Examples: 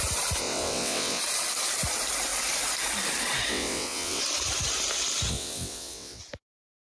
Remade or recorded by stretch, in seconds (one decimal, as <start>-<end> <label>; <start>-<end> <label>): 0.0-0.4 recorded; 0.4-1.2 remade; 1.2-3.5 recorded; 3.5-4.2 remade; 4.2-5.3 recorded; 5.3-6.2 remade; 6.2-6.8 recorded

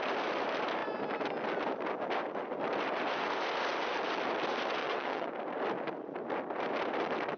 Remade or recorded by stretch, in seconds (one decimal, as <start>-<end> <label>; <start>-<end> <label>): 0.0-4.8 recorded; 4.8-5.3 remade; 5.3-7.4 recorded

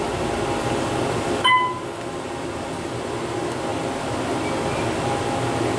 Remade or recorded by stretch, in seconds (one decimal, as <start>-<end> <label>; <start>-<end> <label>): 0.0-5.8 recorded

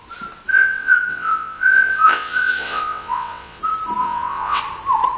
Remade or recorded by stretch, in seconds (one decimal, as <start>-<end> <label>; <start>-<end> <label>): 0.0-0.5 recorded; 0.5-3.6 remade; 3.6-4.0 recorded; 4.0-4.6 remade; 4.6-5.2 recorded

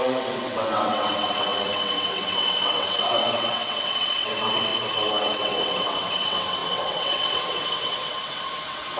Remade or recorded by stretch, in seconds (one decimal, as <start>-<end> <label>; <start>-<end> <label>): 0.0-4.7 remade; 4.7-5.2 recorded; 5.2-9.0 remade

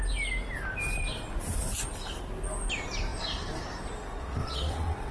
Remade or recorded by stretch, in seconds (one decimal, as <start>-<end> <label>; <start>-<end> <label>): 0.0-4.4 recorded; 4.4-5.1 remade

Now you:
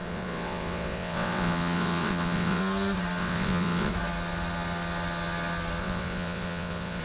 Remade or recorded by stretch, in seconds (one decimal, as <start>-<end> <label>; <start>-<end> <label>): 0.0-2.6 remade; 2.6-3.2 recorded; 3.2-3.9 remade; 3.9-5.8 recorded; 5.8-7.0 remade